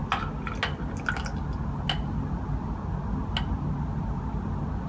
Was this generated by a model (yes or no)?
no